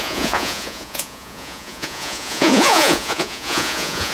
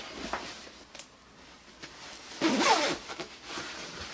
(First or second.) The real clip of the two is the second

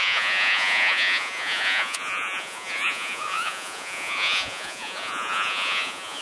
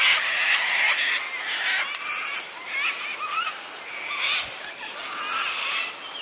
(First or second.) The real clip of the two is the second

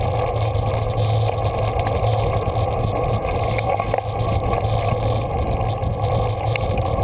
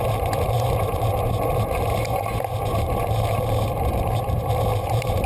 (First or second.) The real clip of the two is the first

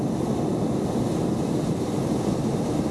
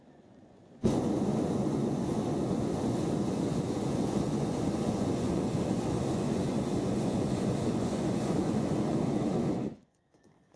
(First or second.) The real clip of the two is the first